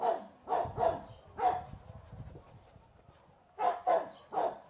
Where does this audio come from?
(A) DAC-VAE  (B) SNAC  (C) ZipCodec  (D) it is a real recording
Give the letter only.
D